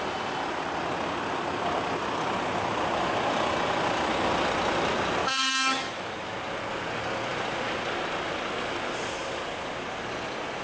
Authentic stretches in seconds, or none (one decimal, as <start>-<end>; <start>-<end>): 0.0-5.2; 6.4-10.6